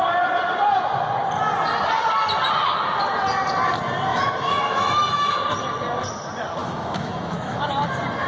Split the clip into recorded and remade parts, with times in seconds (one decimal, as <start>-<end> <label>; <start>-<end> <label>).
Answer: 0.0-4.1 recorded; 4.1-5.4 remade; 5.4-6.6 recorded; 6.6-7.7 remade; 7.7-8.3 recorded